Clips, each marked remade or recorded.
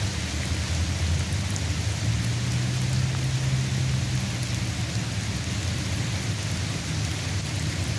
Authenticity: recorded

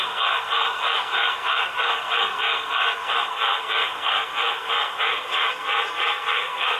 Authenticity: remade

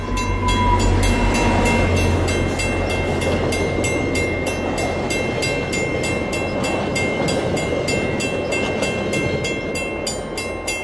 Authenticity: recorded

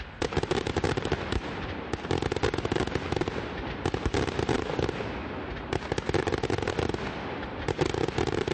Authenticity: recorded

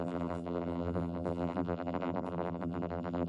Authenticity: remade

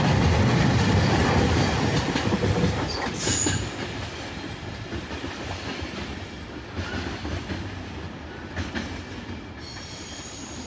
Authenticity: recorded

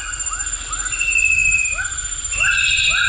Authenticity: recorded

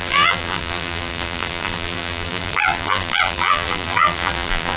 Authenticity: remade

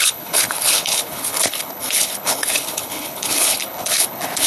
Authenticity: remade